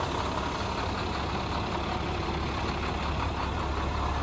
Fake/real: real